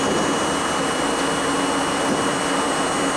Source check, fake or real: real